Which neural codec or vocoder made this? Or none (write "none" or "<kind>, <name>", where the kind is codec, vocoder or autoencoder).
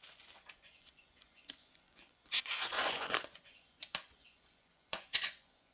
vocoder, Vocos